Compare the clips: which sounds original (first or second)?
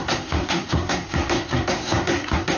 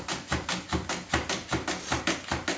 second